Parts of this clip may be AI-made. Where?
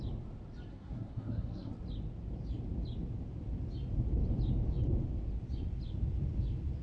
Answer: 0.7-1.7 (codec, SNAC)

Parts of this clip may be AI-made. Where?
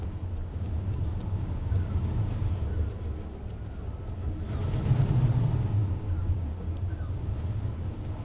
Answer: 0.0-2.7 (codec, DAC); 5.4-8.2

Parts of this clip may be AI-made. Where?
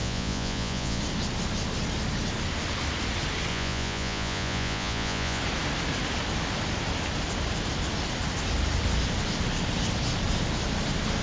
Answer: 0.0-1.0 (vocoder, Vocos); 3.5-5.4